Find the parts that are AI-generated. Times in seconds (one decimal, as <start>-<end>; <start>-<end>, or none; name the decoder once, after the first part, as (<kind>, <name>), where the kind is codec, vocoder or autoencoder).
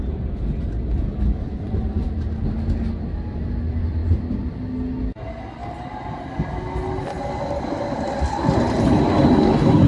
1.4-2.1 (vocoder, Vocos)